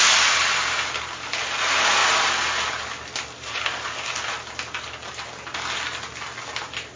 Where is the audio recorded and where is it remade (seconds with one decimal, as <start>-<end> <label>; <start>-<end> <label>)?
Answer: 0.0-7.0 recorded